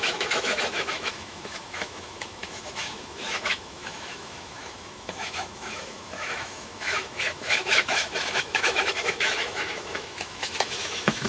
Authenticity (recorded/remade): remade